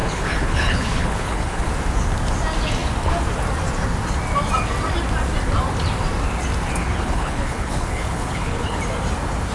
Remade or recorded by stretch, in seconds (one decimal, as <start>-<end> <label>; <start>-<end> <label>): 0.0-1.7 remade; 1.7-6.8 recorded; 6.8-8.8 remade; 8.8-9.5 recorded